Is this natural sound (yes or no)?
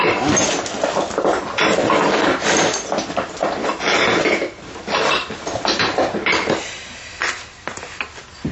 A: yes